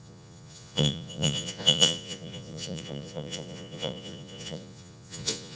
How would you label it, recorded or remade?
remade